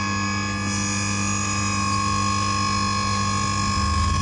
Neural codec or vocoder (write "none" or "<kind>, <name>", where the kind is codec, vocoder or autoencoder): none